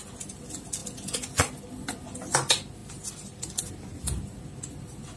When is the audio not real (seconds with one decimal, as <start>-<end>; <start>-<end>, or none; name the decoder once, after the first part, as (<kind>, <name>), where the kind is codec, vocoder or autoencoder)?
none